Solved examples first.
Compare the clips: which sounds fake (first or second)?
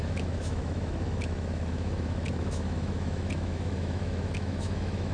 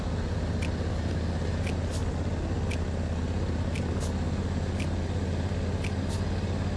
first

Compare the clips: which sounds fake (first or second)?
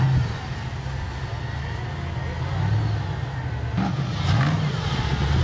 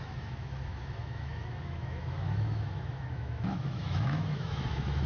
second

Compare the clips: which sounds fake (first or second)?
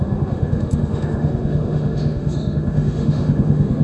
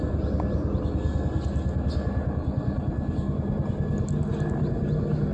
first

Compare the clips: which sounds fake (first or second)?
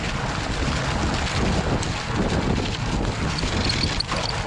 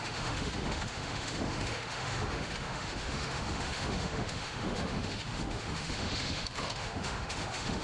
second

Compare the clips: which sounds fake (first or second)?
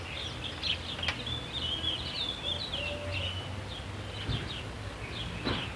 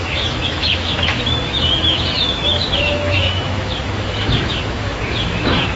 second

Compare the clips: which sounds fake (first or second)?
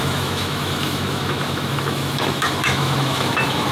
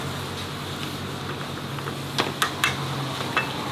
first